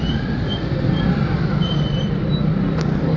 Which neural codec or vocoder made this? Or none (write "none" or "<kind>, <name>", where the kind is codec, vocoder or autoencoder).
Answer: none